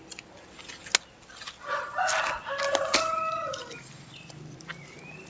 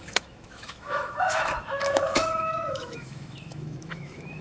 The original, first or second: first